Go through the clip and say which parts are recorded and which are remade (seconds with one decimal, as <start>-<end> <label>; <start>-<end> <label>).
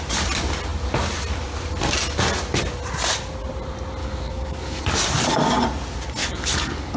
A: 0.0-4.0 recorded; 4.0-4.8 remade; 4.8-6.2 recorded; 6.2-7.0 remade